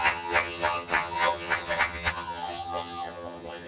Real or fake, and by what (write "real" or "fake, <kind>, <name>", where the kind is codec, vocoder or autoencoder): fake, vocoder, HiFi-GAN